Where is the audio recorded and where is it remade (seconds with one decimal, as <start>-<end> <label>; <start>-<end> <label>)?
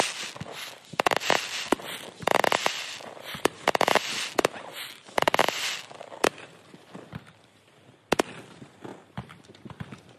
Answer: 0.0-10.2 recorded